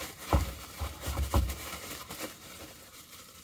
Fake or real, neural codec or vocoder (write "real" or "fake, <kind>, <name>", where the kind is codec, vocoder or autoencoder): fake, vocoder, BigVGAN v2